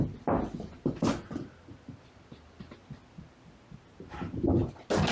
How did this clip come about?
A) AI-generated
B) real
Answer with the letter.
B